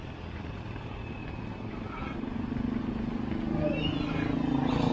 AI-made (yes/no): no